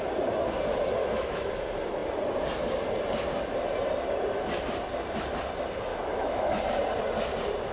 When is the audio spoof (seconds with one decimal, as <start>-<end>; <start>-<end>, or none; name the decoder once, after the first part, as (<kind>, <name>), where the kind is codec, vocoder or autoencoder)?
1.0-1.5 (autoencoder, DAC-VAE); 5.9-6.6